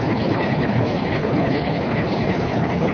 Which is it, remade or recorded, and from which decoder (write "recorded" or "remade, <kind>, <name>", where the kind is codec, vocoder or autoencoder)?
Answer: remade, codec, HILCodec